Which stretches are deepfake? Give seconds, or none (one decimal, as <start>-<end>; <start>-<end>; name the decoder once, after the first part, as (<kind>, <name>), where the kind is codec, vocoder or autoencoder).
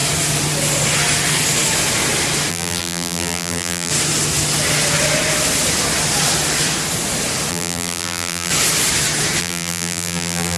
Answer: 2.5-3.9 (vocoder, BigVGAN v2); 7.5-8.5; 9.4-10.6